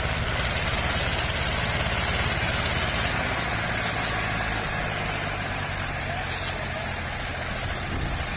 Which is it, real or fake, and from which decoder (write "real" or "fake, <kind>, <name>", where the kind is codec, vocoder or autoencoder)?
real